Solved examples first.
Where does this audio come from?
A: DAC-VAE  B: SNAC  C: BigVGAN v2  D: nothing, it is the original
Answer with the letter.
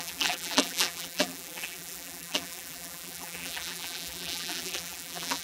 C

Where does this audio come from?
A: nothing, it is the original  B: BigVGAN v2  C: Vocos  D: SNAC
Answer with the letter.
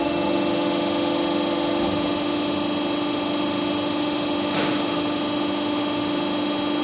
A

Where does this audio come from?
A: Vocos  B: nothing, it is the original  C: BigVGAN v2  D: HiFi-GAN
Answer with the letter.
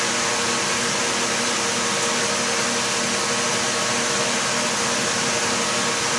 B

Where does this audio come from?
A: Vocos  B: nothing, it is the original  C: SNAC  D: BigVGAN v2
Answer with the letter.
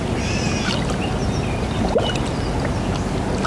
B